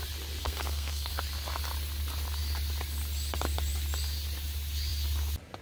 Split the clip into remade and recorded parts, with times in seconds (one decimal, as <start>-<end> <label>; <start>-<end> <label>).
0.0-0.4 recorded; 0.4-1.1 remade; 1.1-5.6 recorded